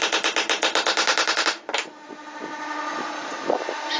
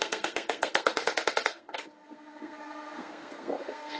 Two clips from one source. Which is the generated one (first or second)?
second